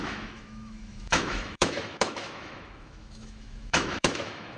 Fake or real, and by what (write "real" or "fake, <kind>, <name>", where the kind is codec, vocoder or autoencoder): fake, autoencoder, DAC-VAE